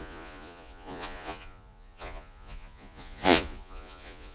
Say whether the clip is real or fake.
fake